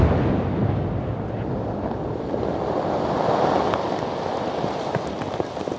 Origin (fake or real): real